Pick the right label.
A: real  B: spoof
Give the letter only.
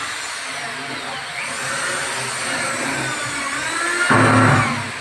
A